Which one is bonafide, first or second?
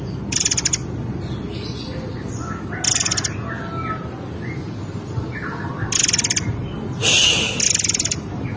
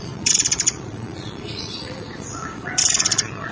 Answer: first